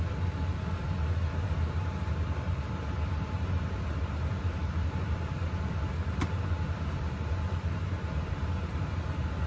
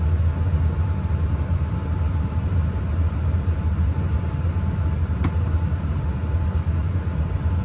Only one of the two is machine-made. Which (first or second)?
first